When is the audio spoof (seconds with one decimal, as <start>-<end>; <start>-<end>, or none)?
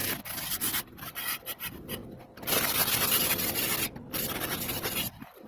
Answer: 0.0-1.4